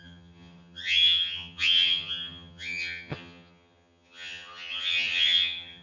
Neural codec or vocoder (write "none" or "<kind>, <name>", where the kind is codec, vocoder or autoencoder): vocoder, HiFi-GAN